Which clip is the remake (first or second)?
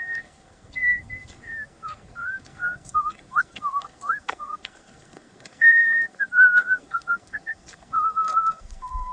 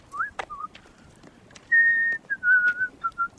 first